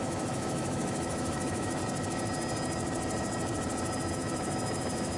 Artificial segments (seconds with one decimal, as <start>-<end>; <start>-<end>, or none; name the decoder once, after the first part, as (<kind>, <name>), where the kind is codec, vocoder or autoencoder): 0.0-1.8 (autoencoder, DAC-VAE); 4.1-5.2